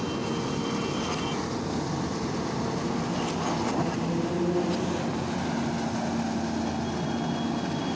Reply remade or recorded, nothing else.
recorded